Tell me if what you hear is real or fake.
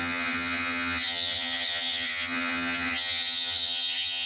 fake